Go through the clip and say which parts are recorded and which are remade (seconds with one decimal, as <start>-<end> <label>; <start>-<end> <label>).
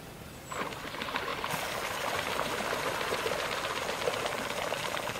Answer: 0.0-1.3 remade; 1.3-2.3 recorded; 2.3-5.2 remade